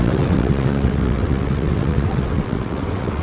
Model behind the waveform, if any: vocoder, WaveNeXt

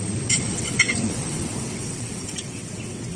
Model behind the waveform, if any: vocoder, WaveNeXt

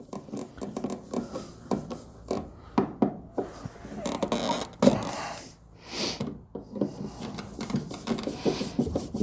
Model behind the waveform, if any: none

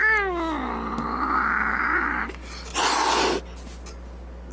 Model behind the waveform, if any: none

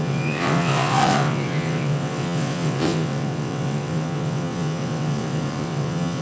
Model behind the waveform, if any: vocoder, WaveNeXt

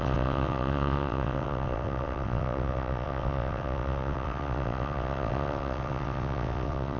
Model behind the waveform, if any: vocoder, WaveNeXt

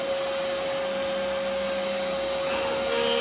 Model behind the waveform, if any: none